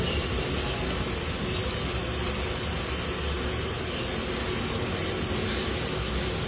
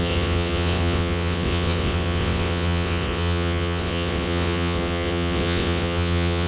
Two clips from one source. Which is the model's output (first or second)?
second